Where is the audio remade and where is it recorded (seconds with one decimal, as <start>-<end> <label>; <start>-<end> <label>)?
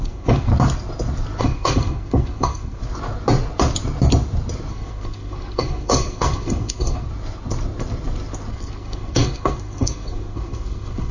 0.0-0.5 remade; 0.5-1.4 recorded; 1.4-2.8 remade; 2.8-4.7 recorded; 4.7-7.1 remade; 7.1-8.5 recorded; 8.5-11.1 remade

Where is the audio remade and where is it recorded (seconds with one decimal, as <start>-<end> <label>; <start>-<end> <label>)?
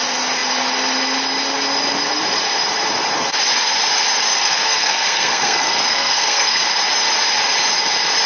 0.0-4.3 recorded; 4.3-6.6 remade; 6.6-8.3 recorded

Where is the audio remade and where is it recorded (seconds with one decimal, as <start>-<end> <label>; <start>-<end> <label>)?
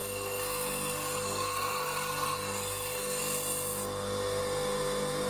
0.0-3.2 remade; 3.2-5.3 recorded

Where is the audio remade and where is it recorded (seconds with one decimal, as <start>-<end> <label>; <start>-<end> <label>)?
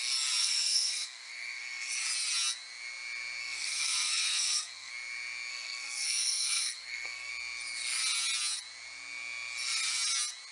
0.0-0.4 recorded; 0.4-1.9 remade; 1.9-3.4 recorded; 3.4-4.9 remade; 4.9-5.5 recorded; 5.5-7.3 remade; 7.3-10.5 recorded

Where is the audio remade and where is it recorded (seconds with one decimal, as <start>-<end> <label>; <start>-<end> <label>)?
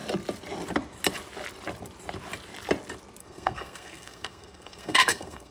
0.0-3.2 recorded; 3.2-5.5 remade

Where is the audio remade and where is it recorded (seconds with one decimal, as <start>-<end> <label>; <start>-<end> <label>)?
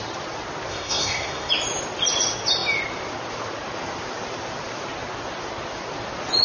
0.0-0.7 recorded; 0.7-1.5 remade; 1.5-6.4 recorded